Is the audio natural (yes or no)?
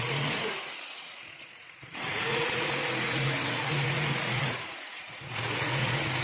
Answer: no